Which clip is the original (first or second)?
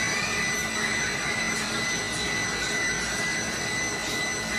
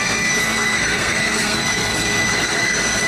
first